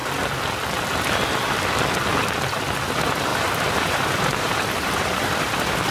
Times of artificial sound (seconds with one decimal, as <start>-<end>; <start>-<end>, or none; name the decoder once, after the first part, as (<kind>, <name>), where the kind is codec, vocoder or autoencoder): 3.3-5.9 (vocoder, BigVGAN v2)